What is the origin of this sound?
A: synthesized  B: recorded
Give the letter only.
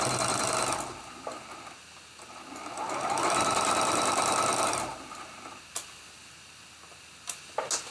B